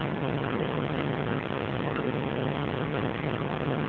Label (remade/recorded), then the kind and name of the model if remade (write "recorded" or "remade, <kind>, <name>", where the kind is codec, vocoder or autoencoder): remade, vocoder, HiFi-GAN